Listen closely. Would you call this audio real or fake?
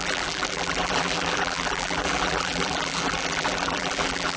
fake